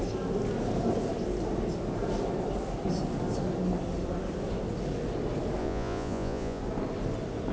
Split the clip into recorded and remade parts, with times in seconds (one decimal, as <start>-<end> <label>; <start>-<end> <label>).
0.0-5.6 recorded; 5.6-6.6 remade; 6.6-7.5 recorded

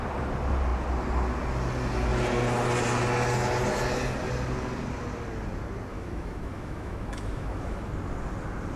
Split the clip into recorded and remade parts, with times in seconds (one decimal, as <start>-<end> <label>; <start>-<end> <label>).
0.0-5.9 recorded; 5.9-7.9 remade; 7.9-8.8 recorded

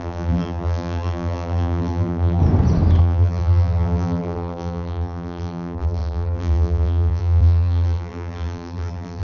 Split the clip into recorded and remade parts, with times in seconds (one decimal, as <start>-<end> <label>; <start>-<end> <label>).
0.0-2.4 remade; 2.4-3.0 recorded; 3.0-9.2 remade

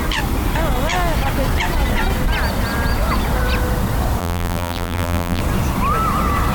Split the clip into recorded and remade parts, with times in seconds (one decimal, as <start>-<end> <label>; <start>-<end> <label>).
0.0-4.2 recorded; 4.2-5.4 remade; 5.4-6.5 recorded

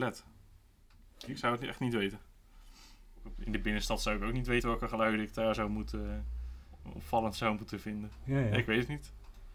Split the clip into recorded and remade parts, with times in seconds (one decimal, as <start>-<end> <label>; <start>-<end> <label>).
0.0-9.5 recorded